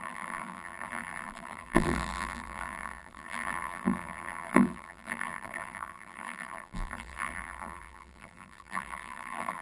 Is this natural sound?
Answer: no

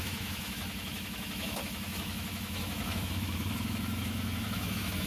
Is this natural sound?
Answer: no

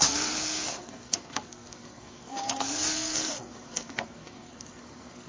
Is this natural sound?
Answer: no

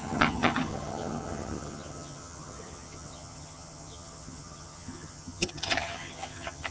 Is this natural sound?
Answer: no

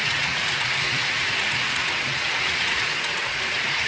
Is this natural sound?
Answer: no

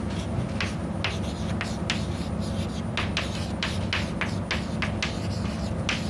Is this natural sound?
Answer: yes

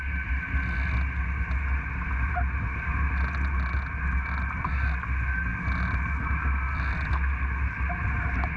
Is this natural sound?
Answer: yes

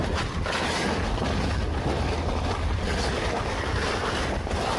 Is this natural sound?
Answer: yes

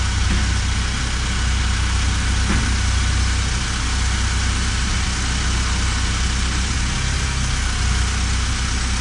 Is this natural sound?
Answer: yes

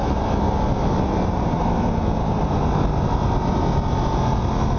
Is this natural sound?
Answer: yes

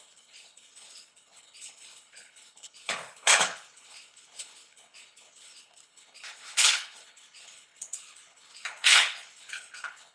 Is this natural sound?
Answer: no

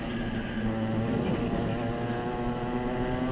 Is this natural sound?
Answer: yes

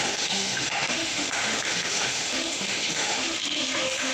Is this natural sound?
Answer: no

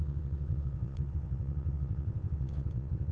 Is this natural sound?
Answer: no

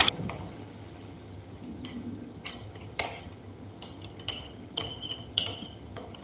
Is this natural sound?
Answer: no